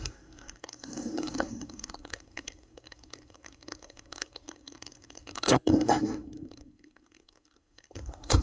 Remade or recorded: remade